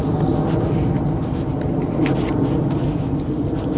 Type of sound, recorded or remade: recorded